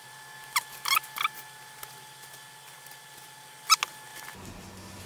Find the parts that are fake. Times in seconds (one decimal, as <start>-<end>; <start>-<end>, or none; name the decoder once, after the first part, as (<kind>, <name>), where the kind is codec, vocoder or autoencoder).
none